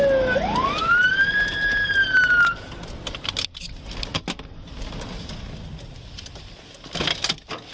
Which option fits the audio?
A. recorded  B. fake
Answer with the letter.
A